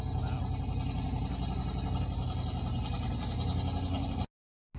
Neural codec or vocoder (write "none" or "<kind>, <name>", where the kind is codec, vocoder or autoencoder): none